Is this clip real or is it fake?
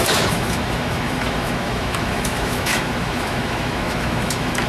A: fake